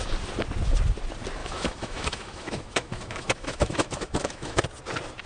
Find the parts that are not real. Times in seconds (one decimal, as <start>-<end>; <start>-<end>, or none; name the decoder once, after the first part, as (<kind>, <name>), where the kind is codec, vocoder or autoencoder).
1.4-4.6 (autoencoder, DAC-VAE)

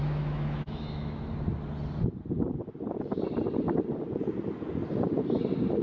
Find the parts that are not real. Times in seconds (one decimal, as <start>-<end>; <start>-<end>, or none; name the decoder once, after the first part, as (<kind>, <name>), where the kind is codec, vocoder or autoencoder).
0.0-1.3 (autoencoder, DAC-VAE)

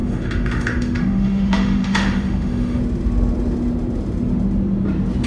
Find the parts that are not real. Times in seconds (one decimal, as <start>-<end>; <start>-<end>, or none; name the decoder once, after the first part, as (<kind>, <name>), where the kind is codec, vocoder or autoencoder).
0.0-2.8 (autoencoder, DAC-VAE)

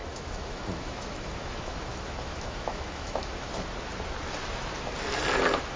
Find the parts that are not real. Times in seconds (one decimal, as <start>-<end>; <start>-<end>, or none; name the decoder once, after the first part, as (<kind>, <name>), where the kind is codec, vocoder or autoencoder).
0.0-3.5 (autoencoder, DAC-VAE)

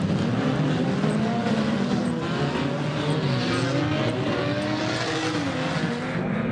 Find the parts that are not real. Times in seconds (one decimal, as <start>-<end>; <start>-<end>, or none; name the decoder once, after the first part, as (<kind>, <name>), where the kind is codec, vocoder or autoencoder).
none

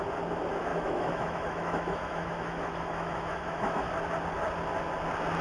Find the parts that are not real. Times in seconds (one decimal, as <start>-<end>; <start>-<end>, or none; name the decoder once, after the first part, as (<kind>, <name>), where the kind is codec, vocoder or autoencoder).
0.7-3.9 (autoencoder, DAC-VAE)

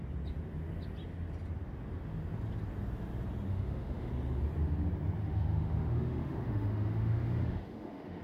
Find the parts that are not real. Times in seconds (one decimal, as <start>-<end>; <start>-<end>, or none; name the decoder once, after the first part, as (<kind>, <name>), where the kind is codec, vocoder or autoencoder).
3.5-4.1 (autoencoder, DAC-VAE); 5.2-8.2

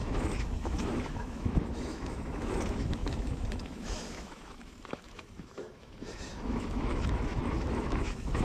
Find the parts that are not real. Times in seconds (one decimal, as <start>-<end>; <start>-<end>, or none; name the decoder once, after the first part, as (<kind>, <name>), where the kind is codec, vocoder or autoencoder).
0.0-8.4 (autoencoder, DAC-VAE)